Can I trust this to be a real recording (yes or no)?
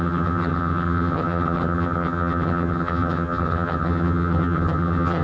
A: no